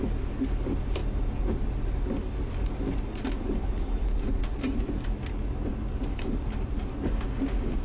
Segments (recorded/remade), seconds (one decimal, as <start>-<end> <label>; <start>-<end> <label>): 0.0-7.8 recorded